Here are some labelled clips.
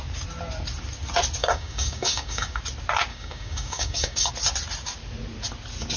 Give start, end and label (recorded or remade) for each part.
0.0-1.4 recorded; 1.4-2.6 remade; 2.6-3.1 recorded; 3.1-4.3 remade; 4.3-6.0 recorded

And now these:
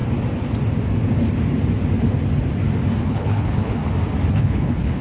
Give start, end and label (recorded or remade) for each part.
0.0-3.0 recorded; 3.0-3.8 remade; 3.8-4.3 recorded; 4.3-5.0 remade

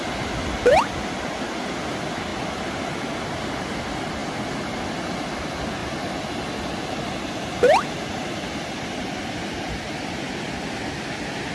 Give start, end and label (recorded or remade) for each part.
0.0-11.5 recorded

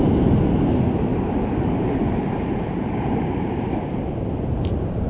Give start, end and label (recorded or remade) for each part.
0.0-1.1 recorded; 1.1-4.0 remade; 4.0-5.1 recorded